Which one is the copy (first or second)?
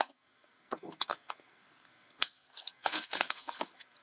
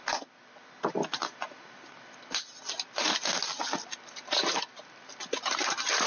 first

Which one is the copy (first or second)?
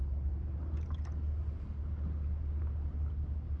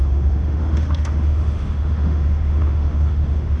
second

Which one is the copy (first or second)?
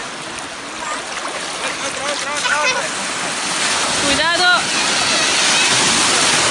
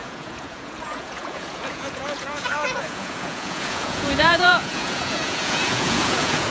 second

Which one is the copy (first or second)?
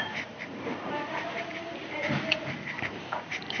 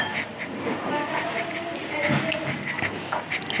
first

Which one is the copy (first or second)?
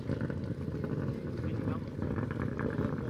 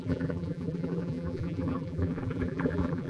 second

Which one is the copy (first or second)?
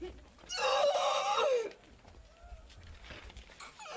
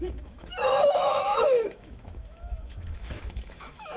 second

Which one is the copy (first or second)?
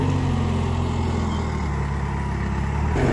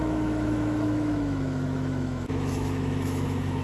second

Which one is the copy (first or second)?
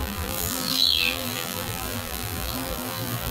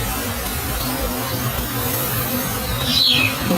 first